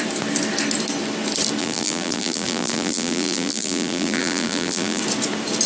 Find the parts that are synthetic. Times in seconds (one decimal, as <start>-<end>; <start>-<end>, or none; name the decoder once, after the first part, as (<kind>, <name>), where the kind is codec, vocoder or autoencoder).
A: 1.6-5.0 (vocoder, BigVGAN v2)